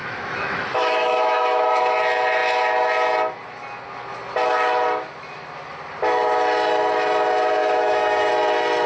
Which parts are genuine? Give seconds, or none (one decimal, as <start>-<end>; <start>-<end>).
1.8-7.6; 8.3-8.9